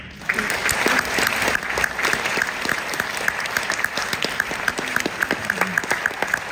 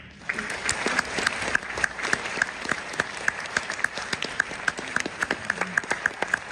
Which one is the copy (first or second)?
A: second